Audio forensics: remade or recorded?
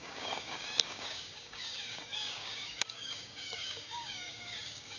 remade